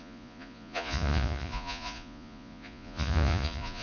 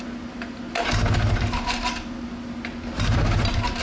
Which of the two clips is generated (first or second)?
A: first